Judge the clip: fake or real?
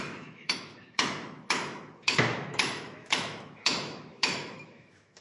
fake